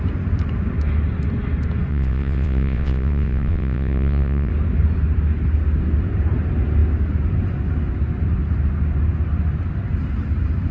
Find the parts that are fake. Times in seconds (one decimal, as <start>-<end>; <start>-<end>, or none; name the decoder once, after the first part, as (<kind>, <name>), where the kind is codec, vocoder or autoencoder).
1.9-4.5 (vocoder, WaveNeXt)